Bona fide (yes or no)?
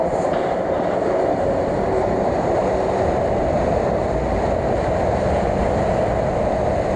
yes